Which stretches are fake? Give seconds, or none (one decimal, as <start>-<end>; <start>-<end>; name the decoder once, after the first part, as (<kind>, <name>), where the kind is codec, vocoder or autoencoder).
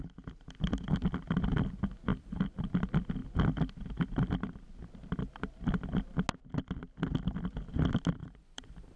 2.1-2.7 (vocoder, BigVGAN v2); 8.2-9.0